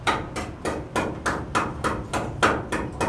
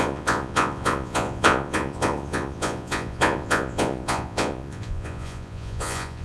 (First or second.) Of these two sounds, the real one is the first